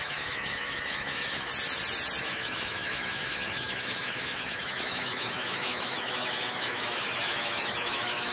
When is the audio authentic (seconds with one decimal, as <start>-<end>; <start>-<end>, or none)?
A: 1.5-2.2